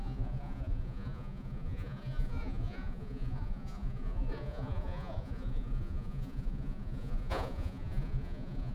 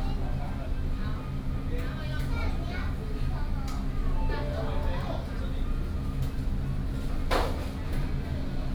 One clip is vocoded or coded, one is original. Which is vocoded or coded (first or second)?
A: first